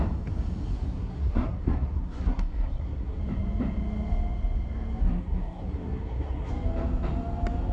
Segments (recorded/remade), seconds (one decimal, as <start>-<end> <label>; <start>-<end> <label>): 0.0-0.7 recorded; 0.7-3.2 remade; 3.2-5.0 recorded; 5.0-6.5 remade; 6.5-7.7 recorded